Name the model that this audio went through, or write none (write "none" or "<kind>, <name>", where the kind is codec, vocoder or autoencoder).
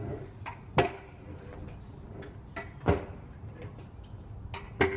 none